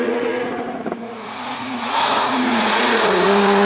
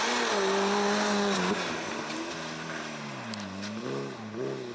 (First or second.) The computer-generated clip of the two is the first